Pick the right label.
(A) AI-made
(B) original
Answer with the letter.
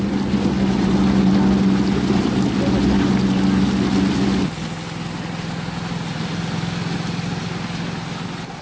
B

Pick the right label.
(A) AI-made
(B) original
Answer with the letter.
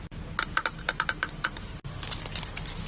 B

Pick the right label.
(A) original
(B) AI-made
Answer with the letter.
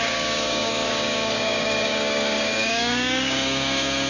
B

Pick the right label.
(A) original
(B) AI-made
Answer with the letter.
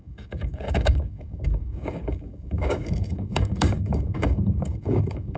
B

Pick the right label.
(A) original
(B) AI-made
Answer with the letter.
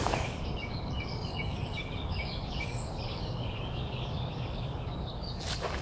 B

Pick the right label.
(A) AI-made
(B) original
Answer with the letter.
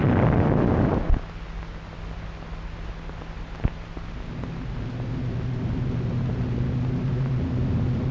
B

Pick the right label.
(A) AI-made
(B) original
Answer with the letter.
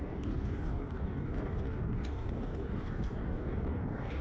A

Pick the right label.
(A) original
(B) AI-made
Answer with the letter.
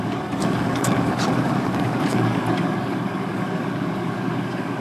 B